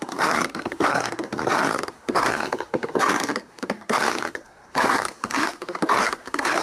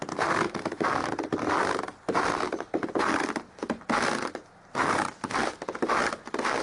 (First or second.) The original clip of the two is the second